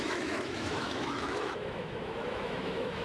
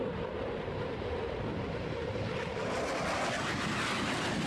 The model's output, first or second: first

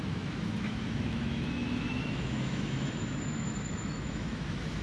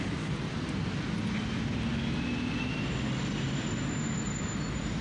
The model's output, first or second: first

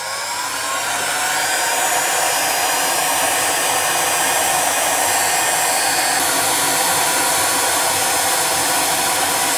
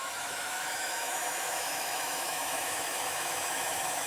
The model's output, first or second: second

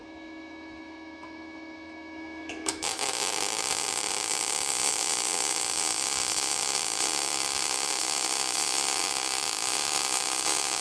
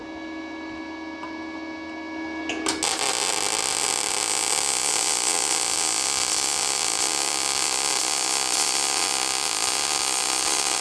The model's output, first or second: first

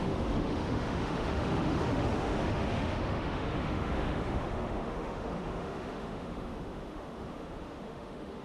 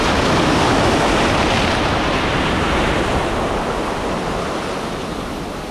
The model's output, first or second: first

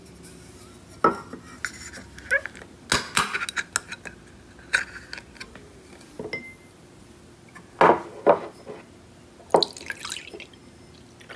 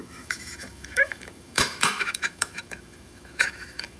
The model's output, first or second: second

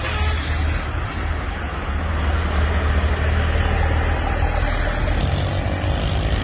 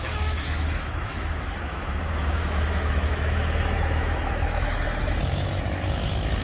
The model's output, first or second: second